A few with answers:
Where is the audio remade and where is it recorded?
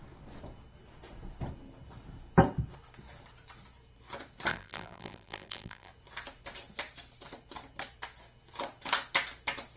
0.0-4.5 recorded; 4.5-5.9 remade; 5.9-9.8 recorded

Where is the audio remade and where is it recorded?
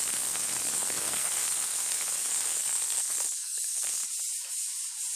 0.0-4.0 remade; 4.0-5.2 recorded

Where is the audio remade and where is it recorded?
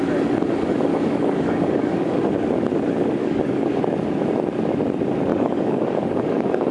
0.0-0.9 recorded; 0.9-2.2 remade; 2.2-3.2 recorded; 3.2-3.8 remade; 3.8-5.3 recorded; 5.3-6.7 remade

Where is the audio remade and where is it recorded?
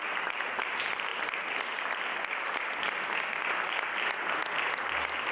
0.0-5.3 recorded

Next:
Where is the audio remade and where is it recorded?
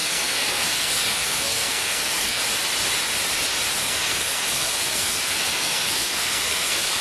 0.0-2.4 remade; 2.4-3.8 recorded; 3.8-7.0 remade